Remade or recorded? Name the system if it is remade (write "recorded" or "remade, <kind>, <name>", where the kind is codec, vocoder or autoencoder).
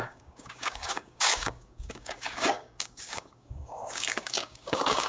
remade, codec, DAC